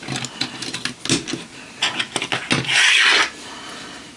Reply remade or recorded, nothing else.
recorded